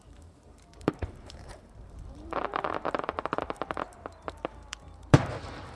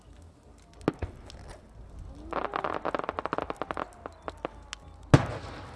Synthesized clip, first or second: first